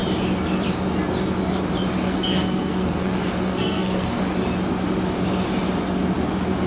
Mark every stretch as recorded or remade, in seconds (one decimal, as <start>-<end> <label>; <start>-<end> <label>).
0.0-2.0 recorded; 2.0-4.2 remade; 4.2-6.7 recorded